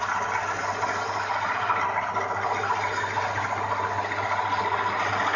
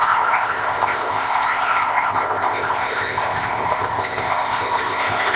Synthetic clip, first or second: second